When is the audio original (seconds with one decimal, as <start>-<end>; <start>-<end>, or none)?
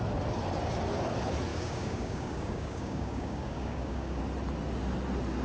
0.0-1.5; 4.2-5.4